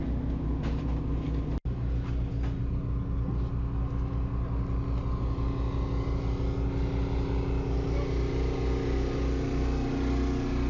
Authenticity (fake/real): real